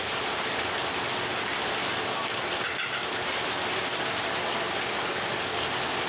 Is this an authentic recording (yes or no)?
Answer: yes